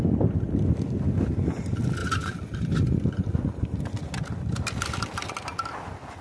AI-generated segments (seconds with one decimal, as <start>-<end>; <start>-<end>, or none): none